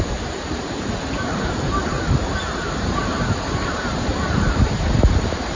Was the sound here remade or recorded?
remade